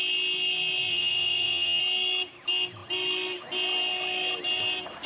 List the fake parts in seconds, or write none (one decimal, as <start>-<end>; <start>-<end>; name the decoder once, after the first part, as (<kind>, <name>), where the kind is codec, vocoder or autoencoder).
0.9-1.8 (vocoder, WaveNeXt)